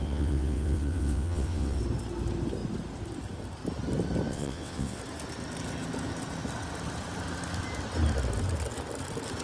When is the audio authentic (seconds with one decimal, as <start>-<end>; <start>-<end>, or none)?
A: 1.8-4.3; 5.0-9.4